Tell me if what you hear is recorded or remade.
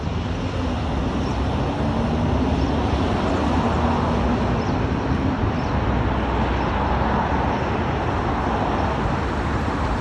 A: recorded